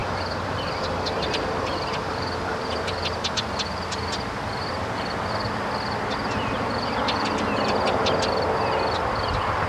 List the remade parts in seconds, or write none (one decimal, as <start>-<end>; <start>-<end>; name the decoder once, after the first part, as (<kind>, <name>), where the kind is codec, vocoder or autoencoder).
0.0-2.9 (vocoder, BigVGAN v2)